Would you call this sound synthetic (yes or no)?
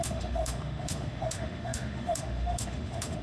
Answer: yes